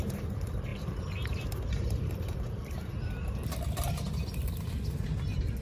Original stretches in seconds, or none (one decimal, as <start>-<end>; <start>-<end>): 2.8-5.6